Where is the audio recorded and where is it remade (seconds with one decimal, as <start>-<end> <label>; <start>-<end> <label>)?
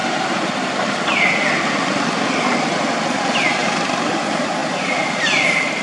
0.0-5.8 remade